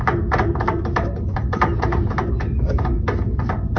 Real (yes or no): no